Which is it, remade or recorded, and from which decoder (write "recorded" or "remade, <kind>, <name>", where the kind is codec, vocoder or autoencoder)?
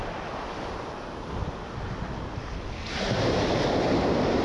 recorded